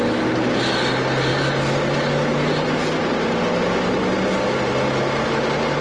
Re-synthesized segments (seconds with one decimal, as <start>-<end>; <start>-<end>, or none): none

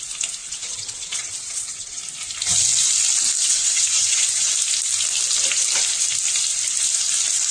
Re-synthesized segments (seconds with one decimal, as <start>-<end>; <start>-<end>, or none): 0.4-2.0; 3.4-4.5